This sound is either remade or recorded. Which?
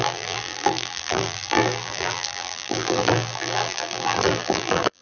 remade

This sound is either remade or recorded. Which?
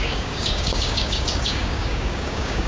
remade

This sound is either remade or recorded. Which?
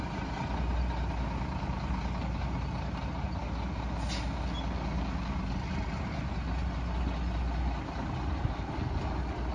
recorded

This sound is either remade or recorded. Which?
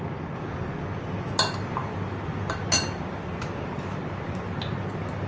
recorded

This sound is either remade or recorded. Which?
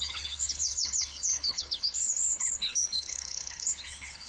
remade